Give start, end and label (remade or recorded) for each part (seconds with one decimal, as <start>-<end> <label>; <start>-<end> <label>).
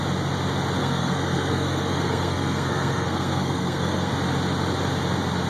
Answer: 0.0-0.8 recorded; 0.8-4.1 remade; 4.1-5.5 recorded